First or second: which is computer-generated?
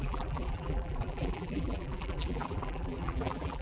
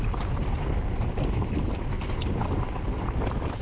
first